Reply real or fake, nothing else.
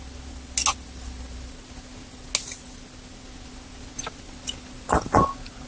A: real